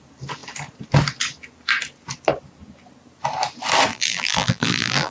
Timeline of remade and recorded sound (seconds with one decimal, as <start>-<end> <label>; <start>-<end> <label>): 0.0-3.9 recorded; 3.9-5.1 remade